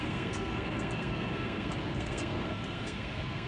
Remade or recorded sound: remade